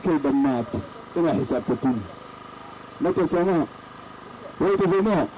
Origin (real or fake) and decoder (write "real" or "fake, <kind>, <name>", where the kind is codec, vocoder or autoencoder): real